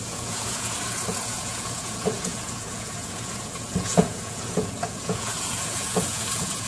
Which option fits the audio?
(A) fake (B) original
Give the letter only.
A